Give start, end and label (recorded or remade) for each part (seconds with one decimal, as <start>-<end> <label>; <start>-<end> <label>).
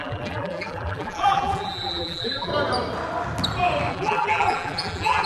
0.0-2.5 remade; 2.5-3.9 recorded; 3.9-5.3 remade